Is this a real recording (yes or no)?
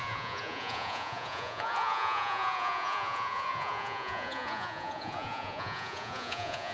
no